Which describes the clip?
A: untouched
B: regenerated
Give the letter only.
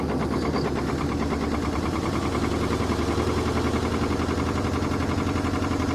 A